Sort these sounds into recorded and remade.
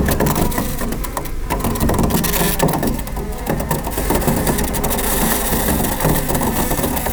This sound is recorded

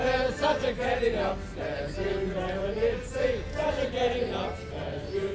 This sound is recorded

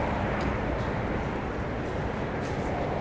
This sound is remade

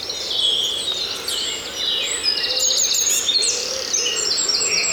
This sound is recorded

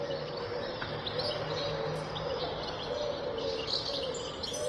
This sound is recorded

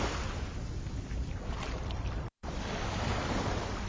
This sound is remade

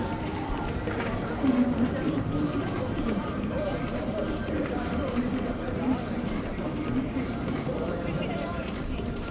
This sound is remade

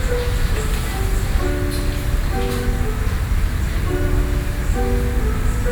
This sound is recorded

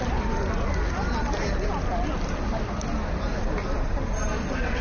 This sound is recorded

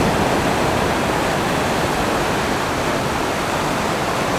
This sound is recorded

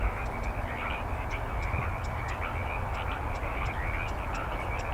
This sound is recorded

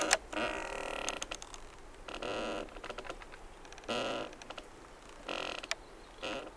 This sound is recorded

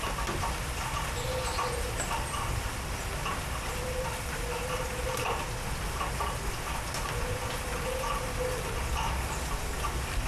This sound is recorded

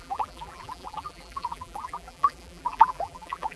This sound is remade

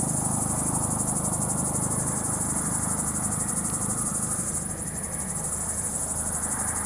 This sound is recorded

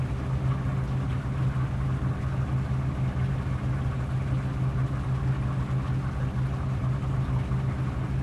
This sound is recorded